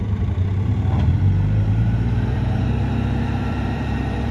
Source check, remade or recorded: remade